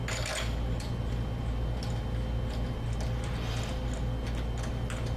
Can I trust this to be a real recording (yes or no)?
yes